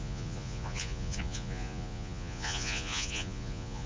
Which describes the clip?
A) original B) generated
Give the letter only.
B